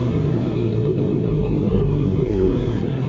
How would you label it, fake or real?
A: fake